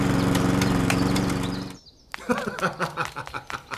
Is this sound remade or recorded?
recorded